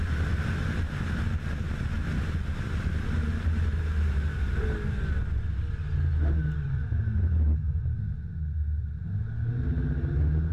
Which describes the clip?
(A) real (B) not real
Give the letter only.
A